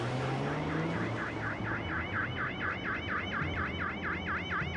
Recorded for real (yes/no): yes